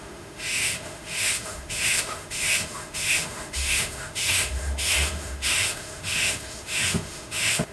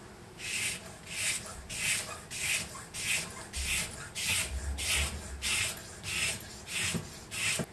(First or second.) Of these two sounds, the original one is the second